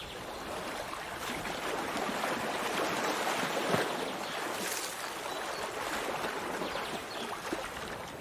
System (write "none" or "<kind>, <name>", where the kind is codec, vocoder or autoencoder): none